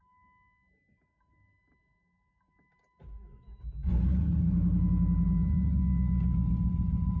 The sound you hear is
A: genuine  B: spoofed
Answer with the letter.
A